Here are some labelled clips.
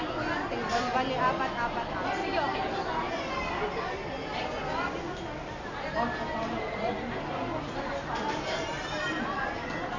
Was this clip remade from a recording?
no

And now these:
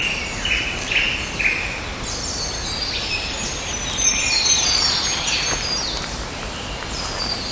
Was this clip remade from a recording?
no